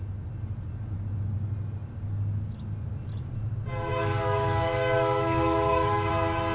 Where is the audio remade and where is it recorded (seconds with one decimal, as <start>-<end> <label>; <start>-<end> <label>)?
0.0-3.9 recorded; 3.9-6.1 remade; 6.1-6.5 recorded

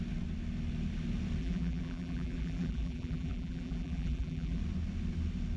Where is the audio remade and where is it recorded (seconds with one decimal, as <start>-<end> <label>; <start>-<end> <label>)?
0.0-1.4 recorded; 1.4-4.6 remade; 4.6-5.6 recorded

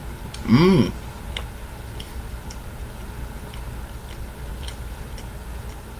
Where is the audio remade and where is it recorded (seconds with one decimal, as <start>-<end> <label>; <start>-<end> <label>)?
0.0-4.5 recorded; 4.5-5.5 remade; 5.5-6.0 recorded